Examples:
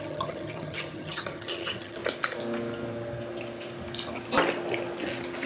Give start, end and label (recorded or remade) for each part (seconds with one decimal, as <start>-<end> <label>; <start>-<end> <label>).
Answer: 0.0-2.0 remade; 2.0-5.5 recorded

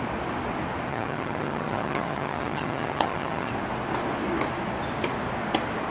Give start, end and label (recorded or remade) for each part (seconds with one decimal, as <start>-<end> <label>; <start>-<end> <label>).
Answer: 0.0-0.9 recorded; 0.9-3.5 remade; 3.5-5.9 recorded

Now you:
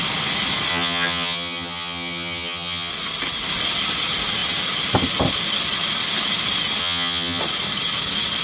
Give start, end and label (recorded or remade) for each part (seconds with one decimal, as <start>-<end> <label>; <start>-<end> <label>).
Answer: 0.0-0.7 recorded; 0.7-2.9 remade; 2.9-6.8 recorded; 6.8-7.4 remade; 7.4-8.4 recorded